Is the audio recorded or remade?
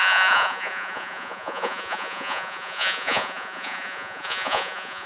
remade